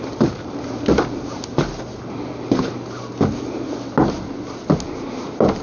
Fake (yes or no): no